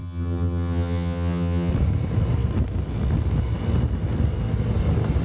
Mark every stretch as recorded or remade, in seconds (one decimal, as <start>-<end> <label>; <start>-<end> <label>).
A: 0.0-1.7 remade; 1.7-5.2 recorded